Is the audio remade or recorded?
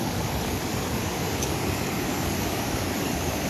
remade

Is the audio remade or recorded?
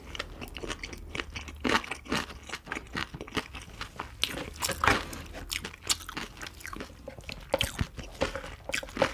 recorded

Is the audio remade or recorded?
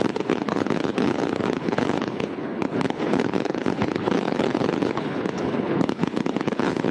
remade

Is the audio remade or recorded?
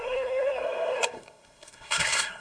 remade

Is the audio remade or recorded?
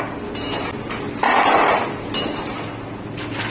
recorded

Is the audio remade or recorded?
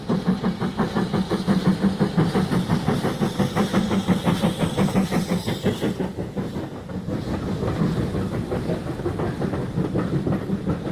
recorded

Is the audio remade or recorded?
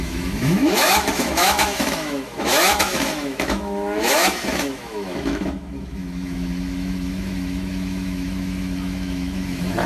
remade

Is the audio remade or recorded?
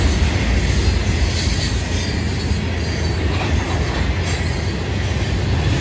recorded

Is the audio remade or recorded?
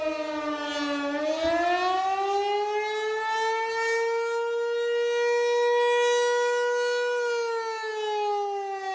recorded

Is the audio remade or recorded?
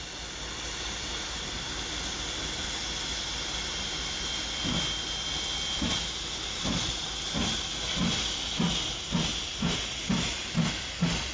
recorded